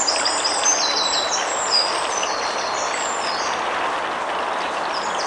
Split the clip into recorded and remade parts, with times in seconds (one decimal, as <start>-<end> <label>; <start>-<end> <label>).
0.0-5.3 recorded